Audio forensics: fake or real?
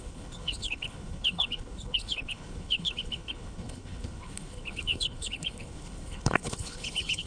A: fake